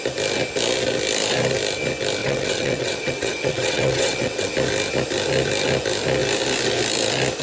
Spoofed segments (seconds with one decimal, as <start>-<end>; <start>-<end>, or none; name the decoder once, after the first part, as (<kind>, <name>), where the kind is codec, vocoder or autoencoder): 2.2-4.5 (vocoder, WaveNeXt)